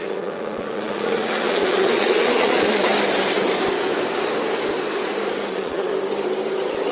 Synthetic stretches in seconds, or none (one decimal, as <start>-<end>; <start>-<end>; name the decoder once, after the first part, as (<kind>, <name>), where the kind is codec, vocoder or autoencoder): 0.0-2.9 (vocoder, Vocos); 5.5-5.9

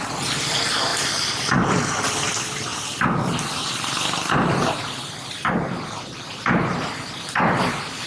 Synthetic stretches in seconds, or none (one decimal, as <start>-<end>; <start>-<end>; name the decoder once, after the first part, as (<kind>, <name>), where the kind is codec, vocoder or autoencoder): none

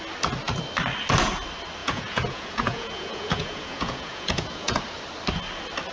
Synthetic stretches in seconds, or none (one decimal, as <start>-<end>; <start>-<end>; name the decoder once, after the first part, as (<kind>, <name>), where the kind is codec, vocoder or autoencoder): 1.8-4.8 (vocoder, Vocos)

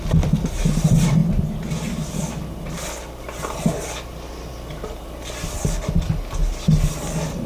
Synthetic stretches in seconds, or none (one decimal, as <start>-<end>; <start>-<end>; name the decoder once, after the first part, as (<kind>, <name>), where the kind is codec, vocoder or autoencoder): none

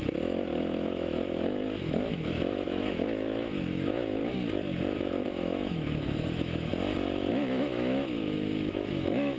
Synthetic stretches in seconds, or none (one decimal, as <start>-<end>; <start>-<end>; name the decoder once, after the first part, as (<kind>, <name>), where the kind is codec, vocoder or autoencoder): 0.0-4.2 (autoencoder, DAC-VAE); 5.0-6.7; 7.3-9.4

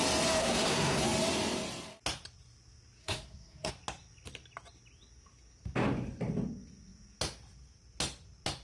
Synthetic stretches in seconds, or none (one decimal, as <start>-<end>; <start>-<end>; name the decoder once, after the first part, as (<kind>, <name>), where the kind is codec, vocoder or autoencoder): 0.4-1.0 (codec, SNAC); 3.0-3.7